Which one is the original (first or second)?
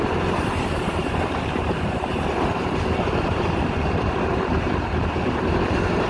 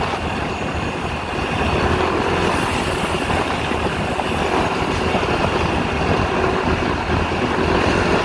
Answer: second